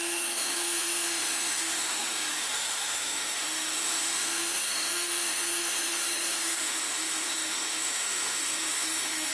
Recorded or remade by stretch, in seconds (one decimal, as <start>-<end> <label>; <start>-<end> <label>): 0.0-9.3 remade